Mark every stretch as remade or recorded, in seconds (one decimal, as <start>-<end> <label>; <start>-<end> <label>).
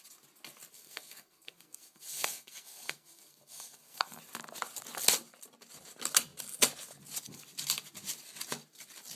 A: 0.0-0.7 recorded; 0.7-4.2 remade; 4.2-9.2 recorded